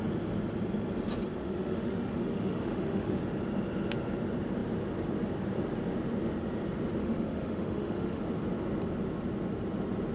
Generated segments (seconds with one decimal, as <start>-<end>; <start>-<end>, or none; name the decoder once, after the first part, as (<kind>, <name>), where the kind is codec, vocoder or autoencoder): 1.4-3.2 (autoencoder, DAC-VAE); 7.0-8.2